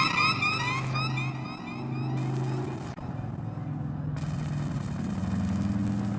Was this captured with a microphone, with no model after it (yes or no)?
yes